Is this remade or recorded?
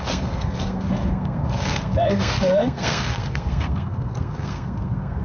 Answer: remade